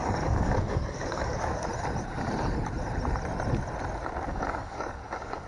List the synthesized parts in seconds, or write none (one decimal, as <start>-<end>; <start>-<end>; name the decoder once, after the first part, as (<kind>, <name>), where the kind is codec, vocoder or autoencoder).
0.0-1.7 (codec, DAC); 4.3-5.5